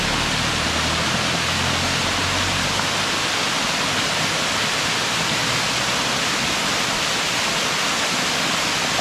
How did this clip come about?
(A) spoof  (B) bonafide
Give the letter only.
B